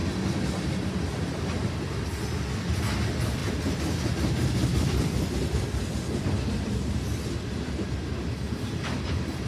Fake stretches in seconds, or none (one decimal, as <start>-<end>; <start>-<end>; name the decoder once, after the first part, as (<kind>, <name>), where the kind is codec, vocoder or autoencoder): none